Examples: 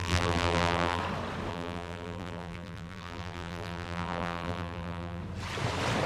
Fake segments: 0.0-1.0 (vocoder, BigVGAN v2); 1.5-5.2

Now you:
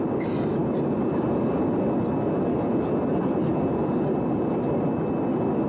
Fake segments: none

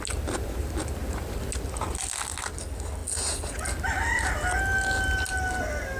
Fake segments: none

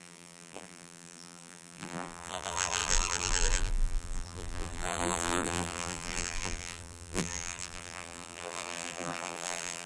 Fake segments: 0.0-9.9 (vocoder, BigVGAN v2)

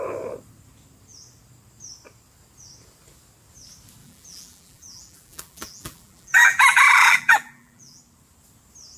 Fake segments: 4.0-8.0 (vocoder, BigVGAN v2)

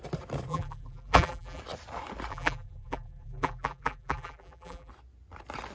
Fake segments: 0.5-1.6 (vocoder, BigVGAN v2); 2.3-4.9

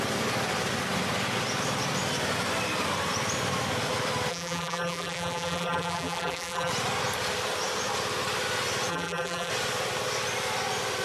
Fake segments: 4.3-6.7 (vocoder, BigVGAN v2); 8.9-9.5